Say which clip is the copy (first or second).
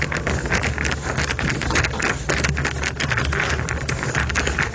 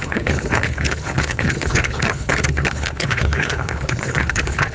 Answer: second